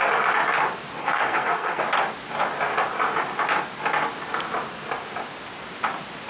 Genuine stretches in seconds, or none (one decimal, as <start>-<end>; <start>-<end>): 0.0-1.0; 1.8-6.3